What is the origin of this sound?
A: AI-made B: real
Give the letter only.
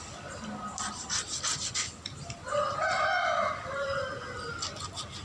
B